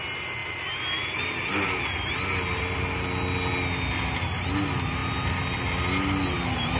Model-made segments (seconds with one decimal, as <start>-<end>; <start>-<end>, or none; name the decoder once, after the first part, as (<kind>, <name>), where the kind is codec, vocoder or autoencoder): none